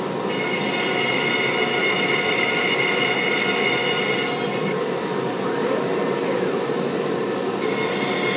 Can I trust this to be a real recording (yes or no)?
yes